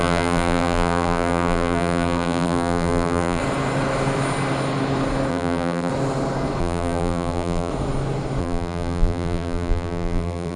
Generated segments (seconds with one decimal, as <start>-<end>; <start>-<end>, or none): 0.0-3.4; 5.3-5.9; 6.6-7.7; 8.4-10.6